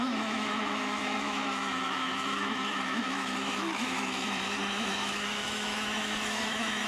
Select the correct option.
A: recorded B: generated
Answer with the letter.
B